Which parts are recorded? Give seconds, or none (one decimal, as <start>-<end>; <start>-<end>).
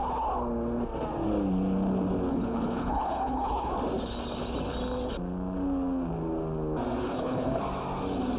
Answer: 0.0-2.3; 3.7-7.0; 7.6-8.4